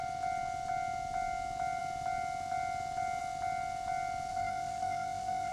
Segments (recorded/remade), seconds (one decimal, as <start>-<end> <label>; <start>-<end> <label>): 0.0-4.3 recorded; 4.3-5.5 remade